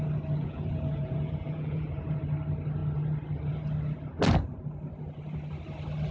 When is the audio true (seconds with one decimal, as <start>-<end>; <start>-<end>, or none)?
0.0-0.4; 2.2-6.1